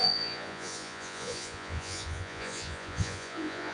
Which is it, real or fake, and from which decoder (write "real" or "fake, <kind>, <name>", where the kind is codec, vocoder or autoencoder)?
fake, vocoder, Vocos